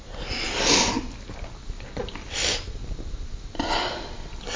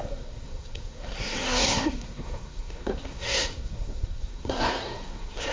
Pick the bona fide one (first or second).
first